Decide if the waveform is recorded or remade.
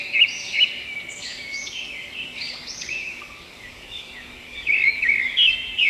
remade